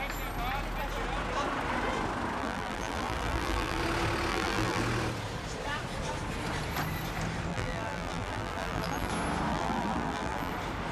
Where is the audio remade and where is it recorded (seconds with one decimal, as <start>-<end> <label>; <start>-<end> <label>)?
0.0-2.4 recorded; 2.4-3.8 remade; 3.8-4.3 recorded; 4.3-4.8 remade; 4.8-7.5 recorded; 7.5-9.1 remade; 9.1-9.5 recorded; 9.5-10.5 remade; 10.5-10.9 recorded